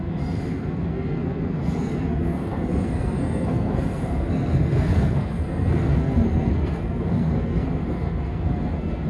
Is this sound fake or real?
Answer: fake